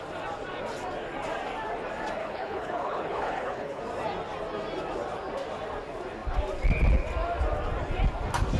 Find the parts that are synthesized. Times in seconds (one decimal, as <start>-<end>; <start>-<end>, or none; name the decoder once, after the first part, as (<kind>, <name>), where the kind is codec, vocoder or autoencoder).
2.2-3.8 (codec, HILCodec)